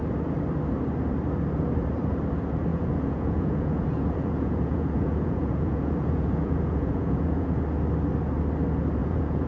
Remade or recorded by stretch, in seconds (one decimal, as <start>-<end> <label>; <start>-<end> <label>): 0.0-2.7 recorded; 2.7-7.6 remade; 7.6-9.0 recorded; 9.0-9.5 remade